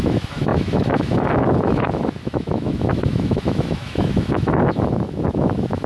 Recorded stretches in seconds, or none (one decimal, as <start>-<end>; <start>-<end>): none